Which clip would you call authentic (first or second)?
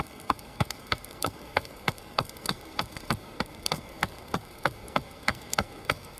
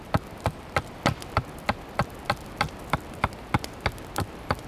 second